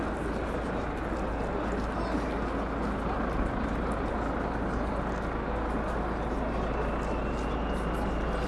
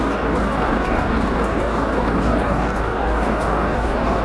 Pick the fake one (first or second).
second